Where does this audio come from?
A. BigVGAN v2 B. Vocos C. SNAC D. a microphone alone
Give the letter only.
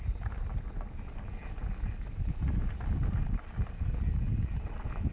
D